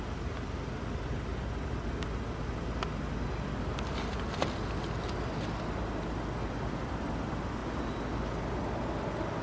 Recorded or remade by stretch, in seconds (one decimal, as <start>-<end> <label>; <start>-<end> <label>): 0.0-9.4 recorded